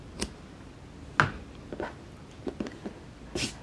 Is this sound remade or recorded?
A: recorded